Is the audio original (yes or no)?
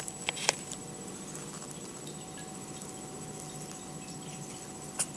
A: yes